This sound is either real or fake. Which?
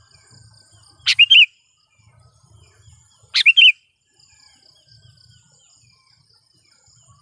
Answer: real